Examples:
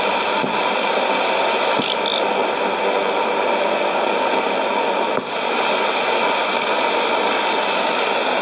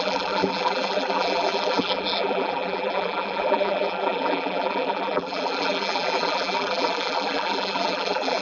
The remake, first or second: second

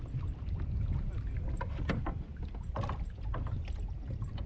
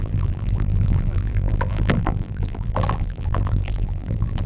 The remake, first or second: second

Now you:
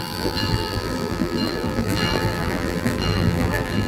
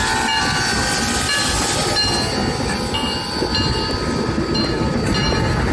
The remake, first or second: first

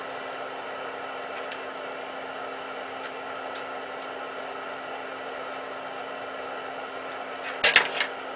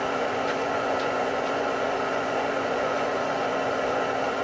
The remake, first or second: second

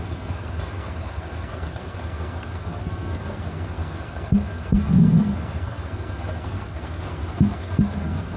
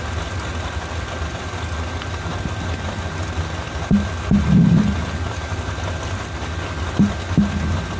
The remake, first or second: first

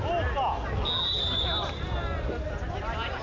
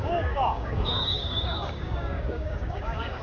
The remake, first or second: second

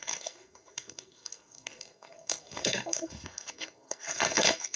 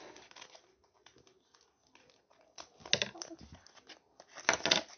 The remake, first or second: first